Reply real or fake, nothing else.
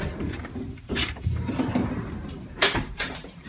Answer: fake